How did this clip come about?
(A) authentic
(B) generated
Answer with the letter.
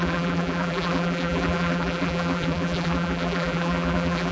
B